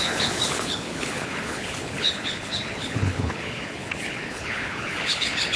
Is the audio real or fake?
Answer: fake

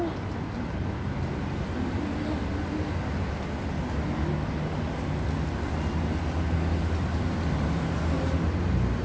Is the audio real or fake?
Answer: real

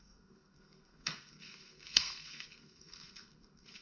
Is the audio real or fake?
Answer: fake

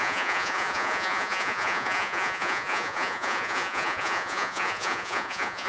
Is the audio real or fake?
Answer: fake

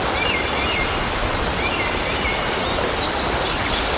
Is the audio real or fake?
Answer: real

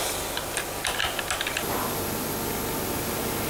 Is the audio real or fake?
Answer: real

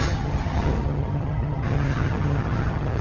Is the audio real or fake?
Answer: fake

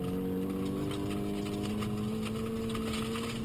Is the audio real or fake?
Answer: real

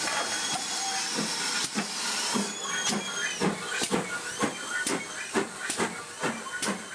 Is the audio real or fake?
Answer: real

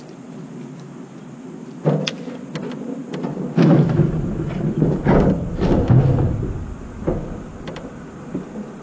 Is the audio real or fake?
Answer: real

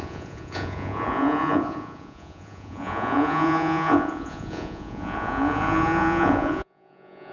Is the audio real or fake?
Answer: fake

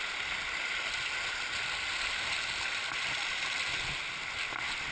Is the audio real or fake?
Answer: real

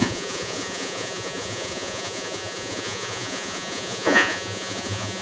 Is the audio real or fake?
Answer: fake